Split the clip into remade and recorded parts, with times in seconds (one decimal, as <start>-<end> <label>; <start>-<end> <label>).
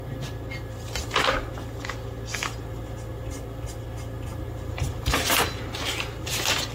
0.0-4.3 recorded; 4.3-5.3 remade; 5.3-6.7 recorded